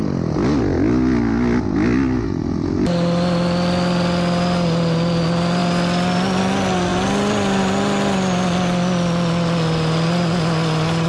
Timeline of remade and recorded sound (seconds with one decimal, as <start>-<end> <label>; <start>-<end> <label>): 0.0-11.1 recorded